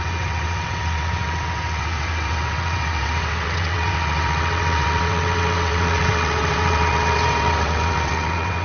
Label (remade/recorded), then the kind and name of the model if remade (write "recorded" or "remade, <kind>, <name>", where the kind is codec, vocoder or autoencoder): remade, vocoder, WaveNeXt